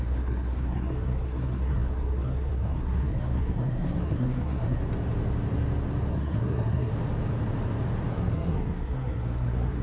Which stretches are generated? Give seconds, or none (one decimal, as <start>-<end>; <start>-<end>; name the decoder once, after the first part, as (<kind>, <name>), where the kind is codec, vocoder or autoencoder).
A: 0.0-4.8 (codec, SNAC); 6.1-6.9; 8.1-9.8